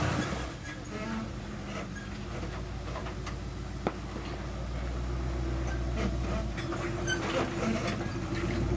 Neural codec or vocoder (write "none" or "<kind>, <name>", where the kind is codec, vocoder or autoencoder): none